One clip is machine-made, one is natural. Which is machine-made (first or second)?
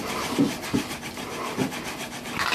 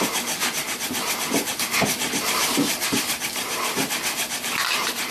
second